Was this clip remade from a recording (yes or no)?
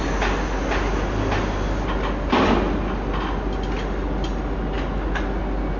no